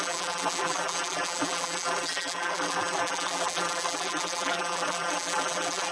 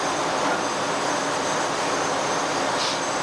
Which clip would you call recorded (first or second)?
second